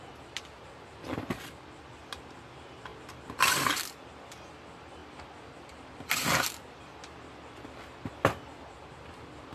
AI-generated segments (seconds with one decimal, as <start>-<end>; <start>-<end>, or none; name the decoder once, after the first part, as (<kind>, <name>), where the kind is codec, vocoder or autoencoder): none